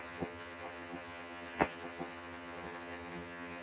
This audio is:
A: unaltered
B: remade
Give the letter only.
B